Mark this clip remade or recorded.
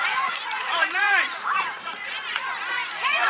remade